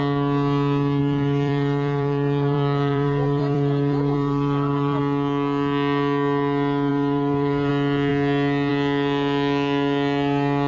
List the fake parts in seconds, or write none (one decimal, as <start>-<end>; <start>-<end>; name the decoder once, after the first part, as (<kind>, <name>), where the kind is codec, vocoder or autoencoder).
1.0-5.0 (vocoder, BigVGAN v2); 6.9-7.7